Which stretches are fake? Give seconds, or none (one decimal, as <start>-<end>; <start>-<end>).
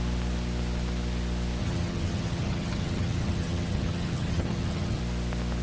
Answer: 1.6-5.0